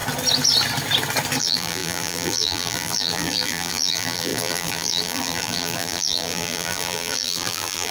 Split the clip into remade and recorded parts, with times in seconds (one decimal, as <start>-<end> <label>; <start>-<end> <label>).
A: 0.0-1.4 recorded; 1.4-7.9 remade